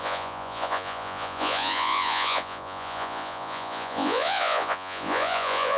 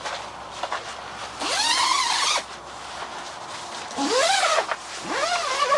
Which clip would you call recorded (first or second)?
second